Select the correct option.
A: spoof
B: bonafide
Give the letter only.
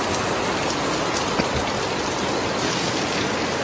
B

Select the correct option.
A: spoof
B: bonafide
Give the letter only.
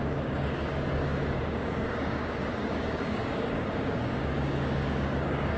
A